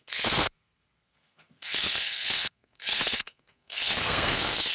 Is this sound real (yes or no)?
no